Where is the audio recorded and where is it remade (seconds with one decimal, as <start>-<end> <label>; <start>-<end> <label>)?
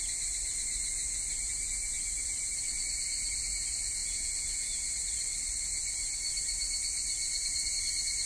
0.0-4.0 recorded; 4.0-4.9 remade; 4.9-8.3 recorded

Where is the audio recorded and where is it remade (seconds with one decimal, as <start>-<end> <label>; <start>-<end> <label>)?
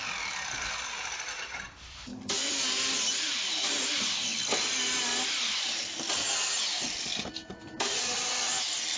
0.0-9.0 remade